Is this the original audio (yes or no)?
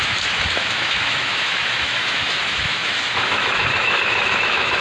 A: no